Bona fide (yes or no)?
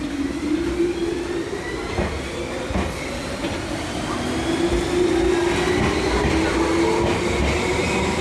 yes